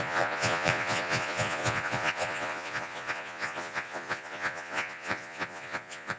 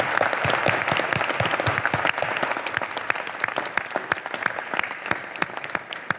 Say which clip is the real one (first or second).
second